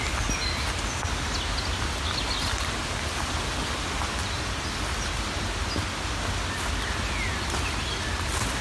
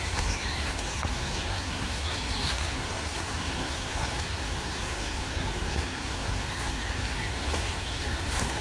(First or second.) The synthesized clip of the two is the second